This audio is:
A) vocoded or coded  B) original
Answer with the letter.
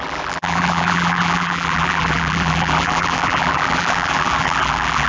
A